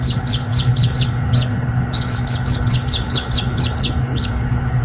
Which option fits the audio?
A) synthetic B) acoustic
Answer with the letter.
A